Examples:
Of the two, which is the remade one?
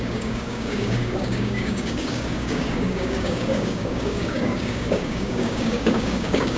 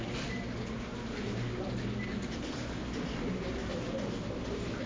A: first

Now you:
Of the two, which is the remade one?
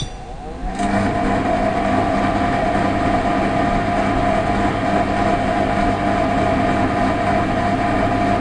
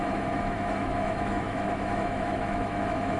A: second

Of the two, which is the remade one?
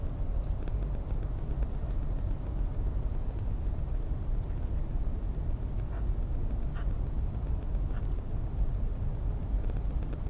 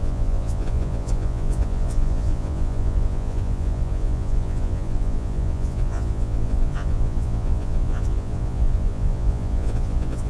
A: second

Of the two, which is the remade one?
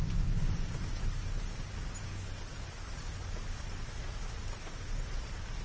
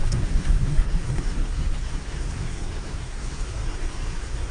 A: second